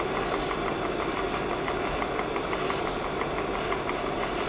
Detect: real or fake real